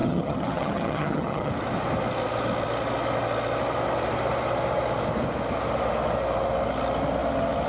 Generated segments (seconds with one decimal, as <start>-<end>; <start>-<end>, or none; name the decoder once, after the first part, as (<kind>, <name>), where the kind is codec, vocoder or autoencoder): 0.0-1.5 (vocoder, HiFi-GAN)